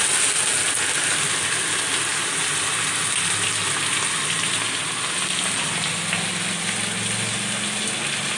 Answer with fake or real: real